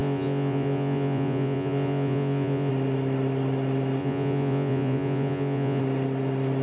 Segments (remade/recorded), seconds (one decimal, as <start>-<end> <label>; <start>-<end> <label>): 0.0-2.7 remade; 2.7-4.0 recorded; 4.0-5.8 remade; 5.8-6.6 recorded